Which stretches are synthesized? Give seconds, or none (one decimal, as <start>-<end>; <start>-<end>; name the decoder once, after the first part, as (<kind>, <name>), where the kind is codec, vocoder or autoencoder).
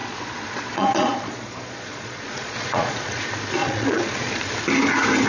0.0-3.2 (vocoder, Vocos); 3.6-4.4